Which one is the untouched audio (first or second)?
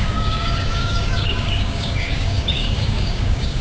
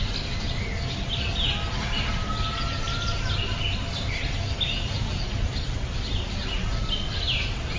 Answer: second